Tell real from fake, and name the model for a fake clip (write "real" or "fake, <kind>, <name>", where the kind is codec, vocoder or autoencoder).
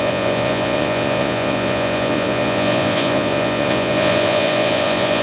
fake, vocoder, Vocos